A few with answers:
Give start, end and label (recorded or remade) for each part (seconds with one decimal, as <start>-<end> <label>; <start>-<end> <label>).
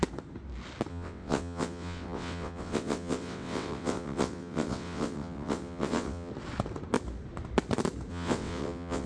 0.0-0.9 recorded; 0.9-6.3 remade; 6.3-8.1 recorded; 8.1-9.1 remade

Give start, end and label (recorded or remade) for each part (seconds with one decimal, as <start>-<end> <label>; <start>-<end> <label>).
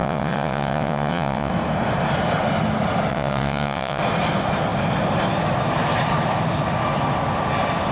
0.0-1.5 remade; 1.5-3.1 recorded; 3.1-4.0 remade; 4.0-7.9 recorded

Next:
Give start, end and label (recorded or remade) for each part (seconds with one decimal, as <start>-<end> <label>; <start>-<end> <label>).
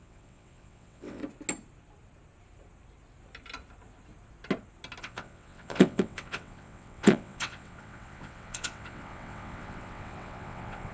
0.0-1.2 remade; 1.2-5.0 recorded; 5.0-10.9 remade